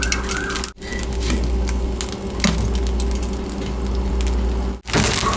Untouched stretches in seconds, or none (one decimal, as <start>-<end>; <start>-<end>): 0.0-5.4